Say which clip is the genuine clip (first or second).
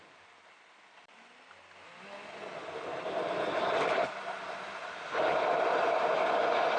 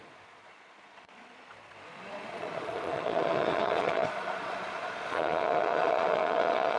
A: first